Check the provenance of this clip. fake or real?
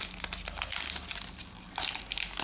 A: real